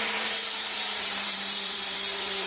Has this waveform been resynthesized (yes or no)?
yes